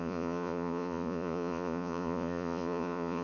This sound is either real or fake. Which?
fake